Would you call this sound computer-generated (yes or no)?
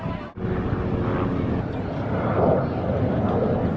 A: no